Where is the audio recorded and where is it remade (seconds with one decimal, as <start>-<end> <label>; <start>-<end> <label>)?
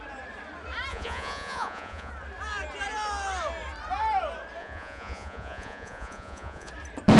0.0-0.9 recorded; 0.9-2.1 remade; 2.1-4.6 recorded; 4.6-6.7 remade; 6.7-7.2 recorded